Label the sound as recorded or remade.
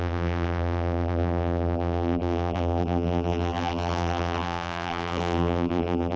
remade